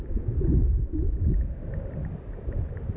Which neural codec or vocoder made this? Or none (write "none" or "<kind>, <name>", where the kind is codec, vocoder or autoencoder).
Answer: none